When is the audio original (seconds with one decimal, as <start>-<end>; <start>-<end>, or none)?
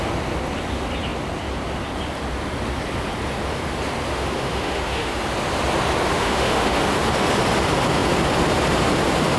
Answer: 0.0-4.1; 5.2-6.2; 6.8-9.4